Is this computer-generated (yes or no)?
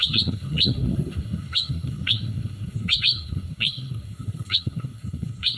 yes